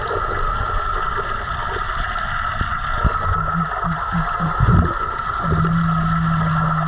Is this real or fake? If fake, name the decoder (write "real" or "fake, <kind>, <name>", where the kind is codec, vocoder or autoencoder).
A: real